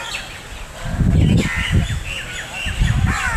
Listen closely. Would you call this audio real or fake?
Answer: real